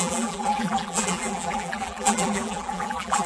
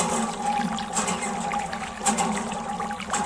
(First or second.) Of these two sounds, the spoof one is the first